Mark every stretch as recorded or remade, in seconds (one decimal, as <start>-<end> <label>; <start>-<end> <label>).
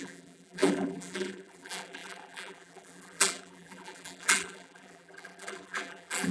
0.0-6.3 remade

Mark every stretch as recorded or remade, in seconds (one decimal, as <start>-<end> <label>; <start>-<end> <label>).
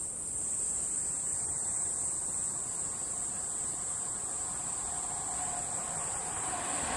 0.0-1.3 recorded; 1.3-2.0 remade; 2.0-7.0 recorded